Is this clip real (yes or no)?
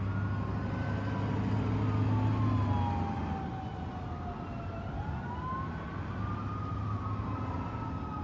yes